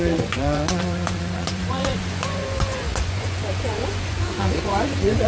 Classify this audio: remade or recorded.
remade